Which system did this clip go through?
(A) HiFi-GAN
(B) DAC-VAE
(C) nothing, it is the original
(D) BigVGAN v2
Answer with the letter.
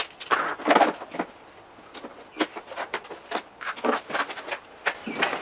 C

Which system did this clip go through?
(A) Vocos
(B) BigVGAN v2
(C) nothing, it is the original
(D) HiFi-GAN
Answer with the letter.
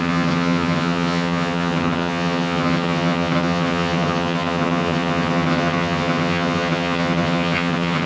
D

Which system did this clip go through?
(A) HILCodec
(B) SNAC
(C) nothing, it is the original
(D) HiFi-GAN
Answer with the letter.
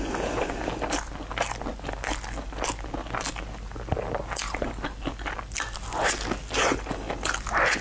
C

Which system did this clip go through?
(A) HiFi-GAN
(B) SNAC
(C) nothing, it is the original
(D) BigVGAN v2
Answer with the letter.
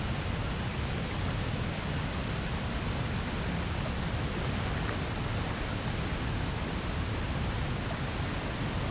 C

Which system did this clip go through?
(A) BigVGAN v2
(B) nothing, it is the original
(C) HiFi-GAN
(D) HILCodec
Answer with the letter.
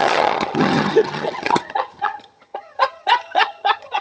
C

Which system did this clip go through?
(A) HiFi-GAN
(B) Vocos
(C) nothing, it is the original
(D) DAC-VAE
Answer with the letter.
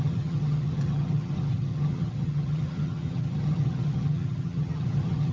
A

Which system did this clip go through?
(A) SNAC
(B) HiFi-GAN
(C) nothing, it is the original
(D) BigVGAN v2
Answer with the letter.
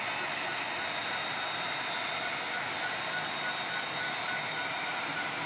C